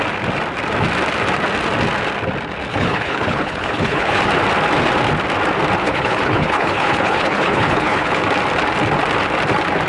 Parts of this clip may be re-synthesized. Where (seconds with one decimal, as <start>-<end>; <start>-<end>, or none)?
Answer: 2.7-4.2; 5.8-8.2